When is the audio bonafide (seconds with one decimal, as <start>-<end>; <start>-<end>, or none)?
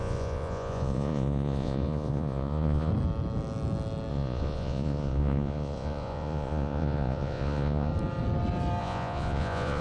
2.9-4.1; 7.9-8.8